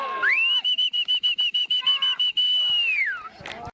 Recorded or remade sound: remade